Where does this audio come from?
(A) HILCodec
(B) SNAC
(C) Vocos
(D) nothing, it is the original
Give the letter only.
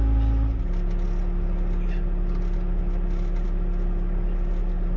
D